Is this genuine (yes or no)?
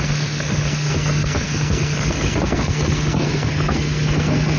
no